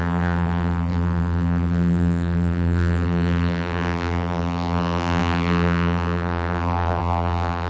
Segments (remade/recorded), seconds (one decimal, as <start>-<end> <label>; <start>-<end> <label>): 0.0-7.7 remade